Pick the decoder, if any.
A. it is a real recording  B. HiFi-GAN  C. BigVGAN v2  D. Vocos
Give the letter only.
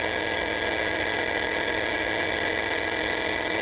B